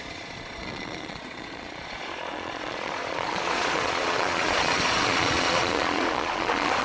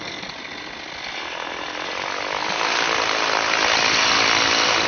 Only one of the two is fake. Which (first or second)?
first